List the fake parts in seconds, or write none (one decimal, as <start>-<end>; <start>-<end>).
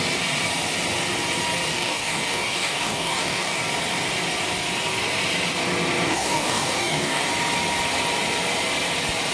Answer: 1.7-3.6; 6.1-7.3